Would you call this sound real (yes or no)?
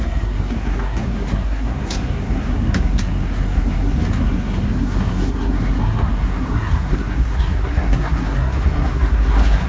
no